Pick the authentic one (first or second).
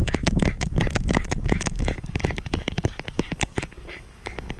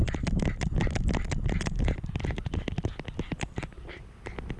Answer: second